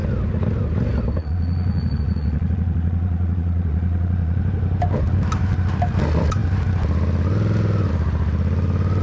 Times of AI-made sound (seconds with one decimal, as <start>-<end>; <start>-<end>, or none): 1.2-4.4